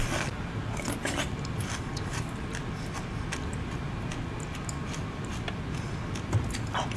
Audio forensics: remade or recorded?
recorded